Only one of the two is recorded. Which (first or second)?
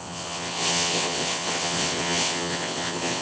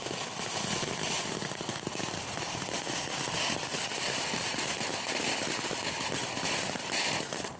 second